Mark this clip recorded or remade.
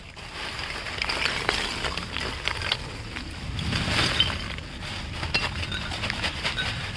recorded